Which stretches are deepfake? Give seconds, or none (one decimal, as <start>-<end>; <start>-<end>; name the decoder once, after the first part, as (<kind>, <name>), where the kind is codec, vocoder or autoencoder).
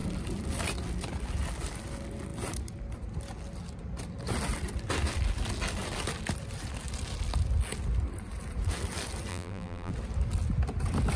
9.3-9.9 (vocoder, BigVGAN v2)